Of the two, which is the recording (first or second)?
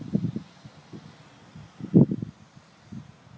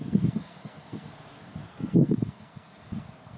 first